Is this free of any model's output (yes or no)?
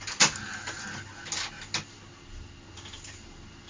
yes